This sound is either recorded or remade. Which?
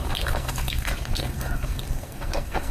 remade